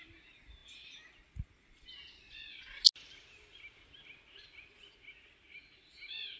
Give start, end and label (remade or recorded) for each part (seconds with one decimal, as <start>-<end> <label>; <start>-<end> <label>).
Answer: 0.0-6.4 recorded